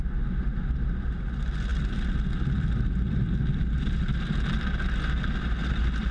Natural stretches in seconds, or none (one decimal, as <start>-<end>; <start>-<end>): 0.0-6.1